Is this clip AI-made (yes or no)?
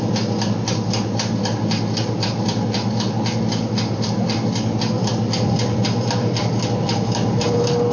no